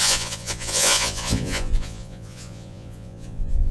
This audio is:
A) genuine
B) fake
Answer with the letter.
B